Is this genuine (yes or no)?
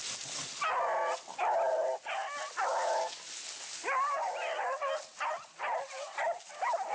yes